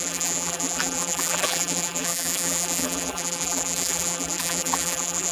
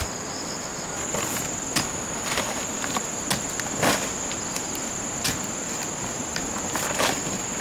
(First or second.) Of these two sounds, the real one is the second